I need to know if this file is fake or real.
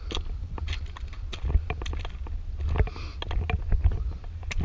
real